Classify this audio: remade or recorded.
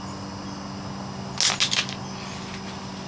recorded